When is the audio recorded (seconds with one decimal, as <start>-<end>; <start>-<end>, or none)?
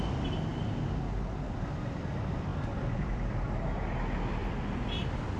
0.0-5.4